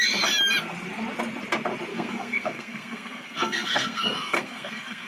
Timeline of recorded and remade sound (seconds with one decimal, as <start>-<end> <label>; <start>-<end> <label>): 0.0-1.9 recorded; 1.9-5.1 remade